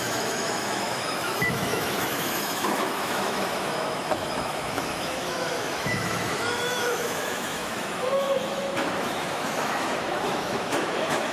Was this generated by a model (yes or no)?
yes